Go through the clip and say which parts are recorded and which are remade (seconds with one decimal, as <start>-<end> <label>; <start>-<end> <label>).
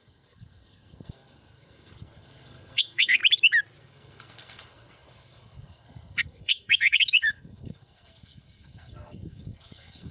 0.0-3.2 remade; 3.2-3.8 recorded; 3.8-10.1 remade